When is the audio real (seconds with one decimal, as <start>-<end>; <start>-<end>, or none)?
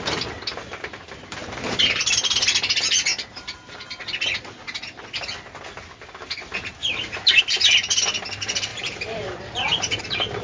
0.0-1.4; 2.0-3.1; 4.0-6.8; 7.4-8.7; 10.0-10.4